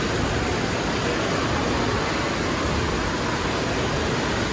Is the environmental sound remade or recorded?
recorded